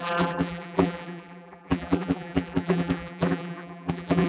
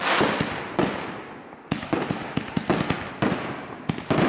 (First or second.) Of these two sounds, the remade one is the first